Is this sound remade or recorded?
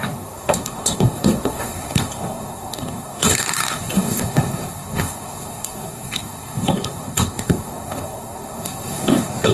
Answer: remade